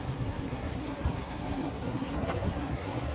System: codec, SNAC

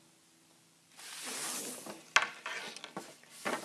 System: none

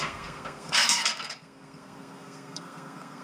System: codec, SNAC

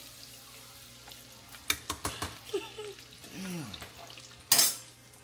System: none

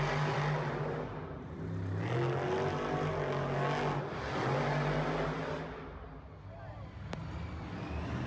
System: none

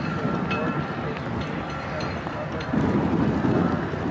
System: none